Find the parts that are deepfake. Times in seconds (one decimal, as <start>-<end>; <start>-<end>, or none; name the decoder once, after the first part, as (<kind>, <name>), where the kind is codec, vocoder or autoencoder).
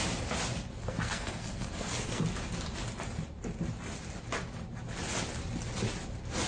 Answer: 0.8-2.2 (codec, SNAC)